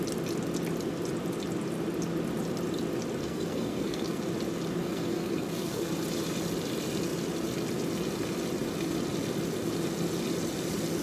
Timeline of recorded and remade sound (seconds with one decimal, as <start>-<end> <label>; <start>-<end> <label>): 0.0-3.2 recorded; 3.2-4.2 remade; 4.2-4.8 recorded; 4.8-5.9 remade; 5.9-11.0 recorded